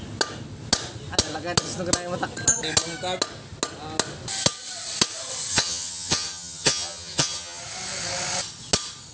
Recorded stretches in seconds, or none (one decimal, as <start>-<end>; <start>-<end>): 0.0-5.5; 7.6-9.1